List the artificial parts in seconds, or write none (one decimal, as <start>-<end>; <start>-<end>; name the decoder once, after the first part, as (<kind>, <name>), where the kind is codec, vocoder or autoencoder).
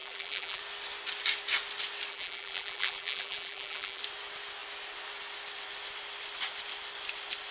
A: 0.0-0.6 (vocoder, BigVGAN v2); 2.1-4.0